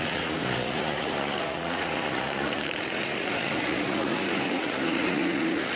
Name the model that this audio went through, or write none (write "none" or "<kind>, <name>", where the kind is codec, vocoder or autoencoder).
vocoder, Vocos